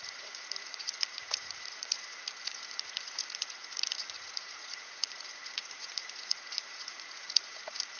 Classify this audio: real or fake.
fake